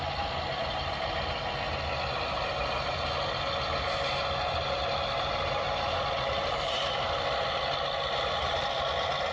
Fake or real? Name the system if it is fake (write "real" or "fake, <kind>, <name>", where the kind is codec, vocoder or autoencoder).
real